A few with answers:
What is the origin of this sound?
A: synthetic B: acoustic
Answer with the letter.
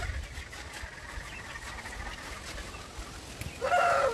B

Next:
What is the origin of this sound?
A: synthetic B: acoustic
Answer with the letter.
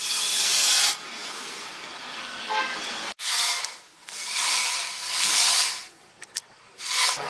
A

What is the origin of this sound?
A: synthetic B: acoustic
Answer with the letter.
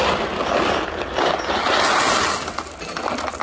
B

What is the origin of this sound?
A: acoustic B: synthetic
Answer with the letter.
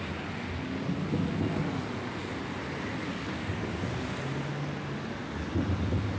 A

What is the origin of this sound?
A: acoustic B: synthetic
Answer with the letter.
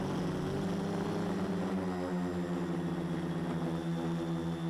A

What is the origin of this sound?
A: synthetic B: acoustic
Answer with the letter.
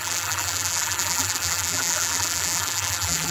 A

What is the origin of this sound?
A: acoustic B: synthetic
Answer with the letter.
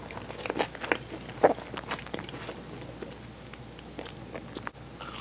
A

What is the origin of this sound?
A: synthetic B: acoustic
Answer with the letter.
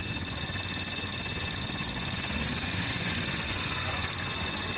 A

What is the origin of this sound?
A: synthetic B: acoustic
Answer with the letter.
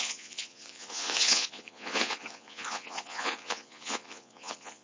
A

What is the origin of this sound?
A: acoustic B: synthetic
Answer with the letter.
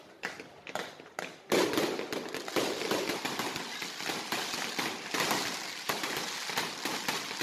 A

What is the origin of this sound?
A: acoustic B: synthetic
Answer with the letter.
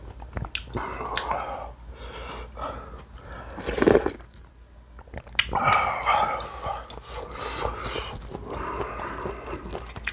A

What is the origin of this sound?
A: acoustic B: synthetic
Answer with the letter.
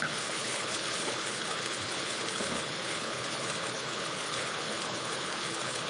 B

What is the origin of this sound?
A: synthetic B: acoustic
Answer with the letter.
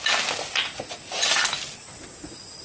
B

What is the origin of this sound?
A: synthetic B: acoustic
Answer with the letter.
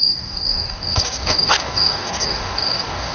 A